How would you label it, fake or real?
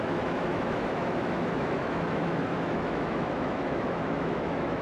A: fake